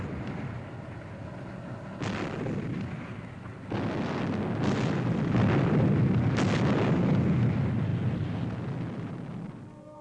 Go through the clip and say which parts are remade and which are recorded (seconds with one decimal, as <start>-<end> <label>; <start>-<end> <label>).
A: 0.0-10.0 recorded